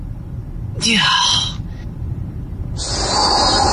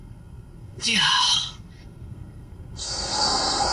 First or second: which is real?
first